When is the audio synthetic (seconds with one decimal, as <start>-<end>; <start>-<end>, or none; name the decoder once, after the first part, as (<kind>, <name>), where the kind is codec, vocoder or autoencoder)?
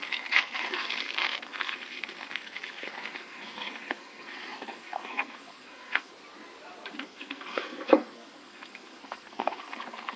0.0-6.1 (codec, SNAC); 6.9-10.2